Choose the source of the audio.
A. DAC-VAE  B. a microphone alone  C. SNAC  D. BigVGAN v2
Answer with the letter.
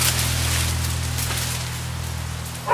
B